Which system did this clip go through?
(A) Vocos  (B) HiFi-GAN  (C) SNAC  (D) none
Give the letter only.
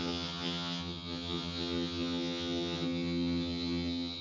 B